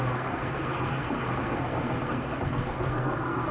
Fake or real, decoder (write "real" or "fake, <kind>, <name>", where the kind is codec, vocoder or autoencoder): fake, codec, SNAC